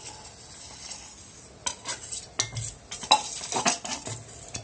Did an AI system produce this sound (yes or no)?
no